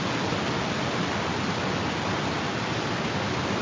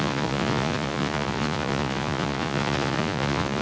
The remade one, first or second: second